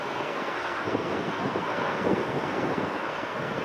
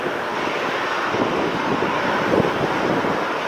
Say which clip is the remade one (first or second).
first